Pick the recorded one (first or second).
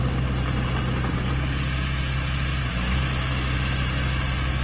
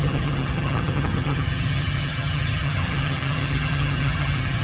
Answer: first